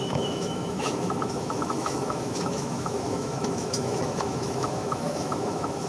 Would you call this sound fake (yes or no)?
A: yes